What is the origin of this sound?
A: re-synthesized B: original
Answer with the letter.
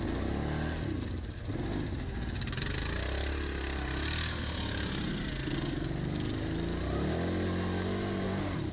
B